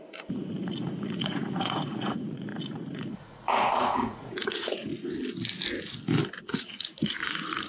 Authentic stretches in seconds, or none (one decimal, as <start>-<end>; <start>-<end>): 4.9-6.4